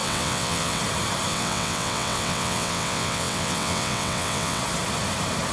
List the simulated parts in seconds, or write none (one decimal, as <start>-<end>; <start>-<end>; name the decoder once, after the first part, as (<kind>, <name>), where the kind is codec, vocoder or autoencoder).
0.0-0.8 (vocoder, WaveNeXt); 1.3-4.6